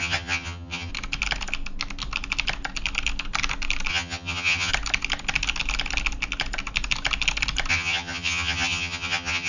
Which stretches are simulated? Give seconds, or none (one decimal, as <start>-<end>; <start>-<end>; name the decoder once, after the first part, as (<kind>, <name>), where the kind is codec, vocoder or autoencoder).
0.0-0.9 (vocoder, HiFi-GAN); 3.9-4.7; 7.7-9.5